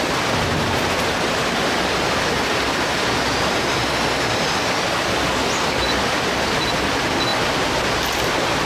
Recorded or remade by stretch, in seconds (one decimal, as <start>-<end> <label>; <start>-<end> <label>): 0.0-8.7 recorded

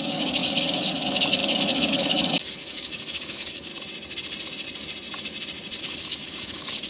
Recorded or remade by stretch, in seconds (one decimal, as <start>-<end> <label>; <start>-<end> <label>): 0.0-3.7 remade; 3.7-5.8 recorded; 5.8-6.9 remade

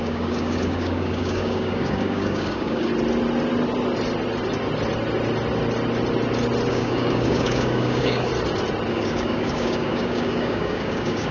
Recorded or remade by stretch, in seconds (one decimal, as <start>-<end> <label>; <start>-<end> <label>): 0.0-2.9 remade; 2.9-6.7 recorded; 6.7-8.3 remade; 8.3-8.9 recorded; 8.9-11.3 remade

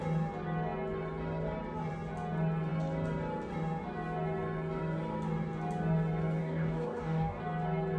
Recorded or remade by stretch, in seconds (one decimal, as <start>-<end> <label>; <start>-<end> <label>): 0.0-6.4 recorded; 6.4-7.4 remade; 7.4-8.0 recorded

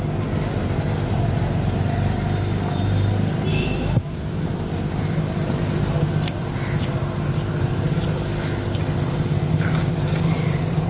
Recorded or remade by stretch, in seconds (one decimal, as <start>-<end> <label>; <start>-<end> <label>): 0.0-3.5 recorded; 3.5-4.5 remade; 4.5-10.9 recorded

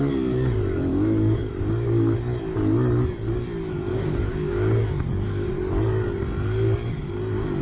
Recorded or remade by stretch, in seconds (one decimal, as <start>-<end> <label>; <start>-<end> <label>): 0.0-0.9 recorded; 0.9-2.2 remade; 2.2-3.9 recorded; 3.9-4.8 remade; 4.8-7.6 recorded

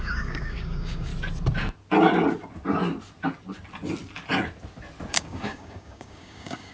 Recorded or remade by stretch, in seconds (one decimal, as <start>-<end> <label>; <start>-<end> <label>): 0.0-1.1 remade; 1.1-5.1 recorded; 5.1-6.7 remade

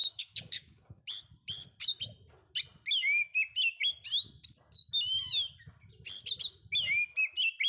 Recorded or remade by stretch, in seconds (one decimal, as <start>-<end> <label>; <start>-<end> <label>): 0.0-1.0 remade; 1.0-7.7 recorded